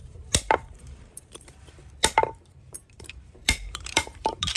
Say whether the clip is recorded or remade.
remade